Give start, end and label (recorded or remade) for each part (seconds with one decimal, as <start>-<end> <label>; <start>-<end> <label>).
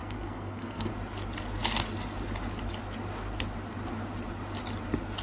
0.0-0.9 remade; 0.9-5.2 recorded